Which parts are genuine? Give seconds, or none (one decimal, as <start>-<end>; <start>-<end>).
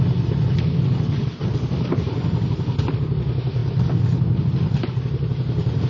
0.0-5.9